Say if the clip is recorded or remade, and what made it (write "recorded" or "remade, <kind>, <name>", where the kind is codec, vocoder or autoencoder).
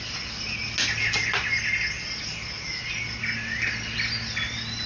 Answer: recorded